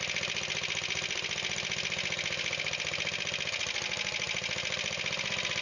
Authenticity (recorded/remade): recorded